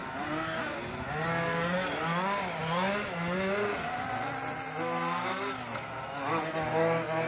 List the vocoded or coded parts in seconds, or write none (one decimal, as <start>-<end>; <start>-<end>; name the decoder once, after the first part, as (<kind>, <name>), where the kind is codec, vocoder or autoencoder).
none

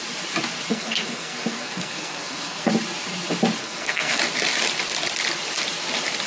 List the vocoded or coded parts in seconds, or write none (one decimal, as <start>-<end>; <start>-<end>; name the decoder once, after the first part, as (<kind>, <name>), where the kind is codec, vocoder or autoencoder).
0.7-2.7 (codec, SNAC); 3.6-4.2

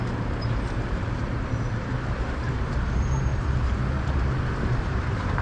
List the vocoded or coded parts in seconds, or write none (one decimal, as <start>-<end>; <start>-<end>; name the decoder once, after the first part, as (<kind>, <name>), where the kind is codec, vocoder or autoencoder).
0.0-3.3 (vocoder, BigVGAN v2); 4.5-5.4

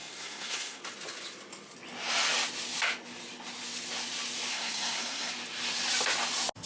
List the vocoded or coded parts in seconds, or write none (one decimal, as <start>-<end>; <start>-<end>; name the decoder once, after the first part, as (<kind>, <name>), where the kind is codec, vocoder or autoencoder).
0.0-0.8 (codec, SNAC); 4.5-5.3